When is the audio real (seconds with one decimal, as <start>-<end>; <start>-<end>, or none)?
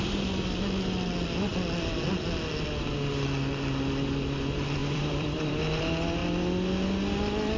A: 0.0-4.8; 5.8-7.6